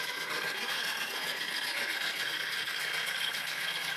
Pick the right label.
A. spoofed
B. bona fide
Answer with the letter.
A